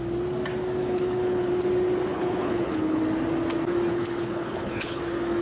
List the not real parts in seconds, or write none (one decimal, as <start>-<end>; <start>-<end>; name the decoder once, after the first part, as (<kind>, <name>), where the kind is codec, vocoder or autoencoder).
0.8-1.5 (codec, HILCodec); 2.1-3.0; 3.9-5.0